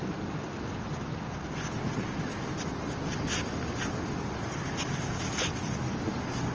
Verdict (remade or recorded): recorded